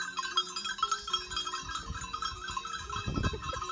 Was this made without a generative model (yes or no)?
yes